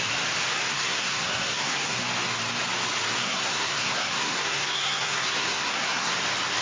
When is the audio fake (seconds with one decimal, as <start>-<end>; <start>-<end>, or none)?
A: 0.5-2.0; 3.2-6.1